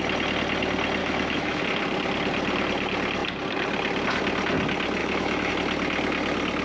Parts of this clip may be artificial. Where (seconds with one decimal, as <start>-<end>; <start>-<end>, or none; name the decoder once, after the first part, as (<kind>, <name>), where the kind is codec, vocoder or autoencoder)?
1.0-1.6 (autoencoder, DAC-VAE); 5.0-5.5